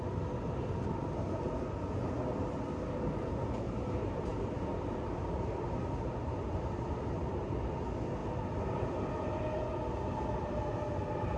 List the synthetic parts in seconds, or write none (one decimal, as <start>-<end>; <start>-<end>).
none